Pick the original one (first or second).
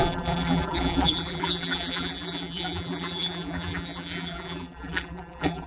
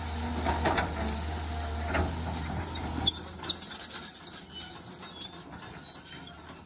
second